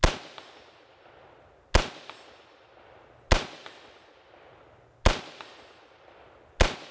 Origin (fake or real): real